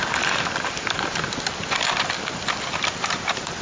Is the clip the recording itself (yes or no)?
yes